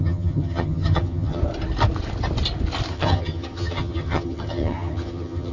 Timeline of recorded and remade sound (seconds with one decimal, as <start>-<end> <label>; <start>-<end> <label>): 0.0-1.4 remade; 1.4-2.9 recorded; 2.9-5.5 remade